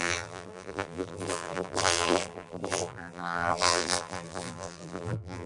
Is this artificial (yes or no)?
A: yes